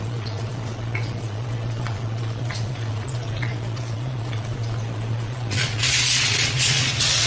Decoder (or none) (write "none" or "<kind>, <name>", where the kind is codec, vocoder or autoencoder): vocoder, Vocos